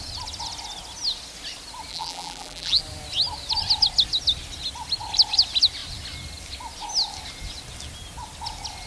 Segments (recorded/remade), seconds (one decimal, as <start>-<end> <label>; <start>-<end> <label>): 0.0-1.9 recorded; 1.9-2.8 remade; 2.8-8.9 recorded